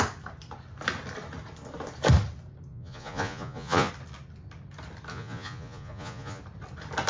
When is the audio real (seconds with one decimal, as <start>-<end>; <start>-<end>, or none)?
0.0-2.7; 3.9-5.1; 6.4-7.1